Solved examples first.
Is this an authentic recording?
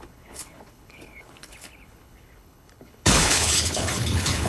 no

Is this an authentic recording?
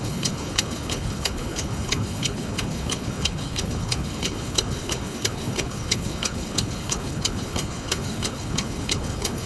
no